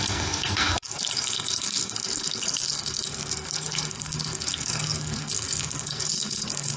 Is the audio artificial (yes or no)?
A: yes